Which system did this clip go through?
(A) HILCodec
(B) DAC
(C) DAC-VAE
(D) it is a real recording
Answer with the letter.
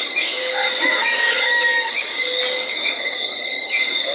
B